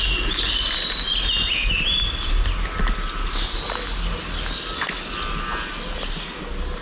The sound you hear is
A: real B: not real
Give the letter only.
A